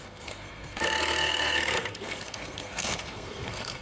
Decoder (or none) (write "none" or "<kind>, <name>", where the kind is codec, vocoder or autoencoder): codec, SNAC